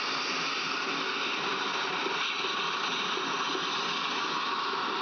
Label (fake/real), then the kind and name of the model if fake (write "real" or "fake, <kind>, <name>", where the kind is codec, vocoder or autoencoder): real